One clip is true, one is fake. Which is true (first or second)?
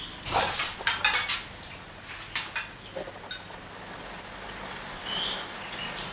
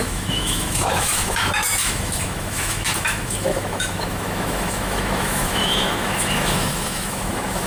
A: first